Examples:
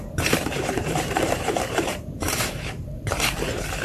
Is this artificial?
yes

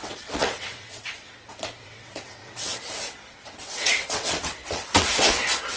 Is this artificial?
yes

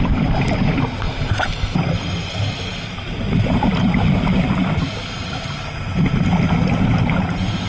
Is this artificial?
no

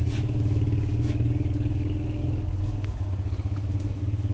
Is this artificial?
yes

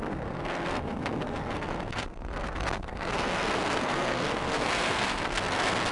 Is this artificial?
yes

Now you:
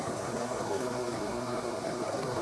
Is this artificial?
yes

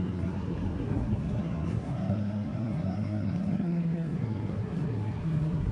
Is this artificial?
yes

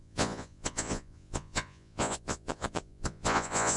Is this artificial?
yes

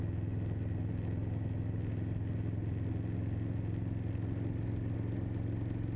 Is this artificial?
no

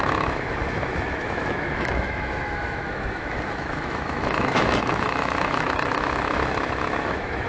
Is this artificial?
yes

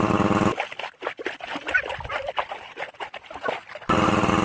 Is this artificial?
no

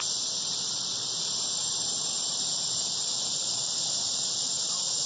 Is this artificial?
yes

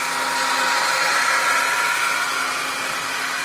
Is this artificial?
no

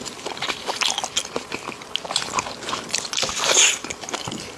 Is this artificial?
no